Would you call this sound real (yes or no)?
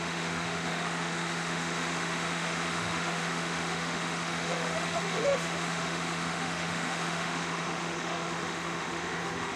no